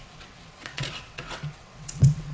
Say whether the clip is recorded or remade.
remade